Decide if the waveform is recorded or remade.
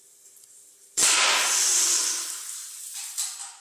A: recorded